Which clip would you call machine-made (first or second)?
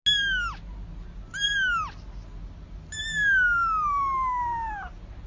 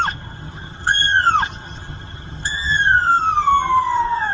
second